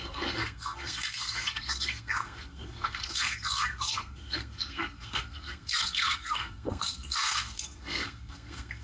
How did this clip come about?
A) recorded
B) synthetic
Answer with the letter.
B